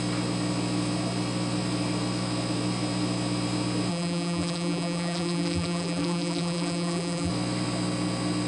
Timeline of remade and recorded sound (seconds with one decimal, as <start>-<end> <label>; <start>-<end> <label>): 0.0-3.9 recorded; 3.9-7.3 remade; 7.3-8.5 recorded